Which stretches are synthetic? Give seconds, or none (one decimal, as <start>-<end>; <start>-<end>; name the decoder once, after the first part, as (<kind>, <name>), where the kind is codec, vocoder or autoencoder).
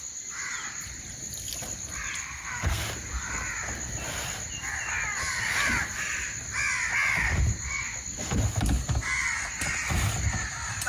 2.2-2.8 (codec, SNAC)